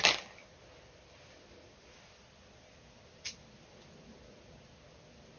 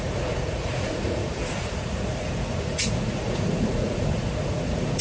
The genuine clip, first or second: first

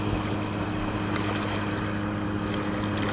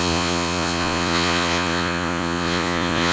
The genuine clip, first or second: first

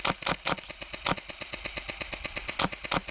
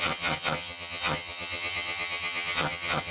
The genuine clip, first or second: first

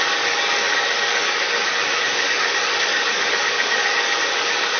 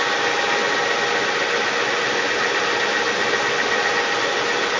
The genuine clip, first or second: second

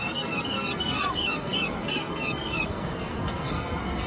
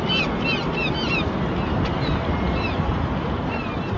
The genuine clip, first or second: second